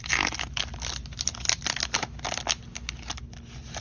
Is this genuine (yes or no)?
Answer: yes